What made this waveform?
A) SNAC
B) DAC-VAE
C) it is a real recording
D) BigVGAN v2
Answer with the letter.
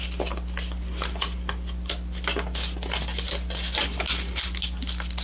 C